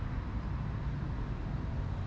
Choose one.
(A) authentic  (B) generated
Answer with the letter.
A